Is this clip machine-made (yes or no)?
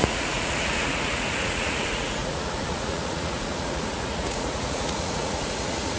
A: yes